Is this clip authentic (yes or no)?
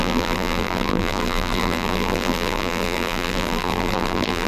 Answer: no